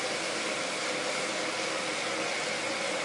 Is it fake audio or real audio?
real